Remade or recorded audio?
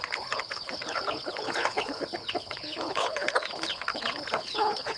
remade